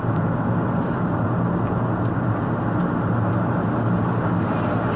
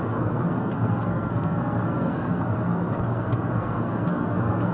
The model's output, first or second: second